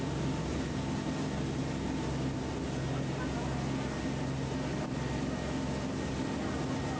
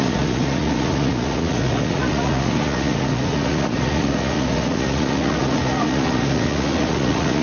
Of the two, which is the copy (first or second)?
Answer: second